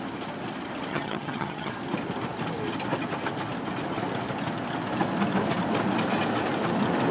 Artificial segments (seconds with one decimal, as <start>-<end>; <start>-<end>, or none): 0.9-1.7

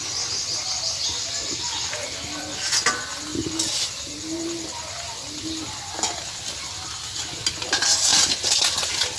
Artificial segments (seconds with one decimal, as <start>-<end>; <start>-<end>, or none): none

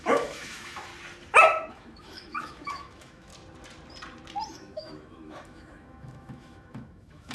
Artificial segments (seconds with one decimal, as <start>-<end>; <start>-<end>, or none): 0.0-0.9; 1.7-3.3; 4.5-7.3